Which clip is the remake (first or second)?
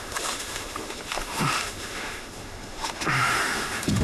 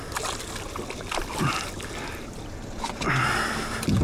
first